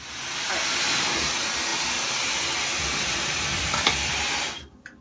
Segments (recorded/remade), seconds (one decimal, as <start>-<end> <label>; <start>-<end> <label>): 0.0-5.0 recorded